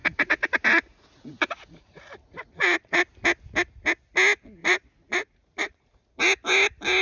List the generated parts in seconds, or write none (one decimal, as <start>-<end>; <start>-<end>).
0.0-3.0; 4.6-6.1